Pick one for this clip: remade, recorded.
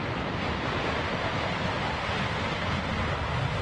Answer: recorded